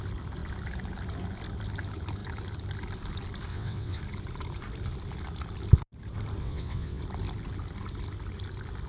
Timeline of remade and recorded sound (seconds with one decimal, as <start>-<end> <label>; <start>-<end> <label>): 0.0-3.5 recorded; 3.5-4.0 remade; 4.0-6.4 recorded; 6.4-7.0 remade; 7.0-8.9 recorded